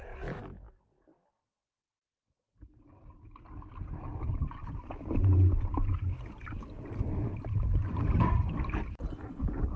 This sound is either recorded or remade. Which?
recorded